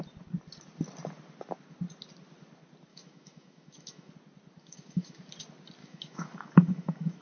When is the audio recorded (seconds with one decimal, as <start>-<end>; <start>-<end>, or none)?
0.0-2.9; 4.1-4.6; 5.2-5.8